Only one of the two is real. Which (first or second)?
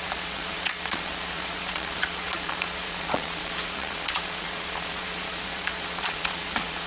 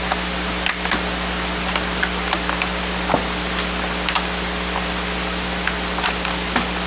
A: second